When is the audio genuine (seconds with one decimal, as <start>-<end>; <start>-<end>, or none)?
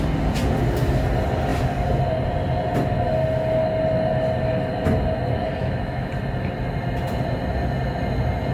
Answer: 0.0-5.6; 6.1-8.5